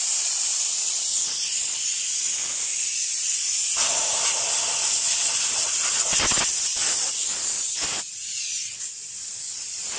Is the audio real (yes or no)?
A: yes